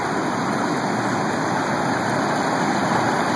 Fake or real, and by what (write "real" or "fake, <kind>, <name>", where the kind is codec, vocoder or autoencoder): real